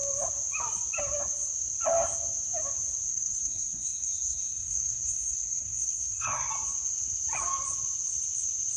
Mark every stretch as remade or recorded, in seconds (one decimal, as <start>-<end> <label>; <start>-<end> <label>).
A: 0.0-3.1 recorded; 3.1-6.5 remade; 6.5-8.8 recorded